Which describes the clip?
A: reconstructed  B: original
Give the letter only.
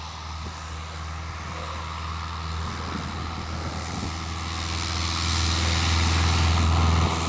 B